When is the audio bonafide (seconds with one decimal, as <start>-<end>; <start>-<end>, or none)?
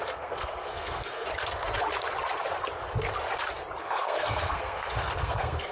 1.3-3.8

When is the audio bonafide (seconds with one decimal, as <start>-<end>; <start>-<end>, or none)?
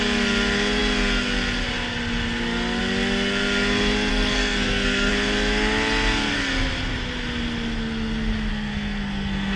0.0-4.1; 5.1-8.5